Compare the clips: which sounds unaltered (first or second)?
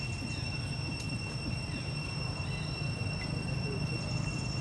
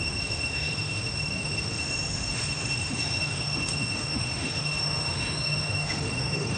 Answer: first